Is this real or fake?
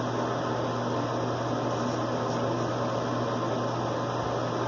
real